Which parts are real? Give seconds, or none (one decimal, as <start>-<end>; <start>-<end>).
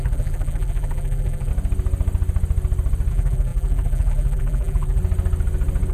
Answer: 1.5-3.1; 5.0-5.9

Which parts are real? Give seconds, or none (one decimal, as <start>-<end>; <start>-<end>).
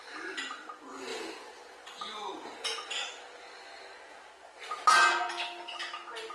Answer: 0.0-6.3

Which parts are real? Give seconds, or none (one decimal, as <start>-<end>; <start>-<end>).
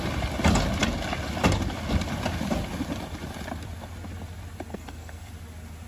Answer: 0.0-4.7; 5.3-5.9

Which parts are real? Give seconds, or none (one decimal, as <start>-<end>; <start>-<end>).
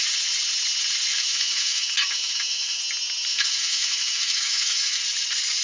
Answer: 0.0-1.1; 2.8-3.3; 5.0-5.6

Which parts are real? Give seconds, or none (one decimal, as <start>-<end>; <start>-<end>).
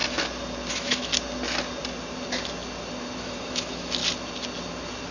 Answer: 0.0-0.7; 1.1-3.2; 4.0-5.1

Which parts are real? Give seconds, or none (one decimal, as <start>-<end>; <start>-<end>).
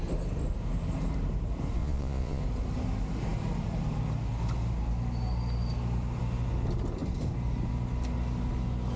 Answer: 0.0-1.8; 2.4-9.0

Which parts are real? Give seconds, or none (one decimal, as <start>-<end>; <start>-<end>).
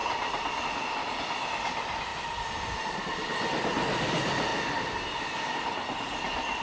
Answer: 0.0-6.6